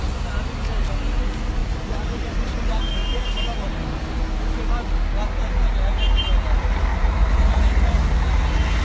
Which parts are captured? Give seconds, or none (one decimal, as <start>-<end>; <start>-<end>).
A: 0.0-1.6; 2.6-3.0; 3.7-6.9; 7.6-8.8